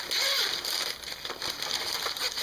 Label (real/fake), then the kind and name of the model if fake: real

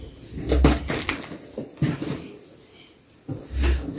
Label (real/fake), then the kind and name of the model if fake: real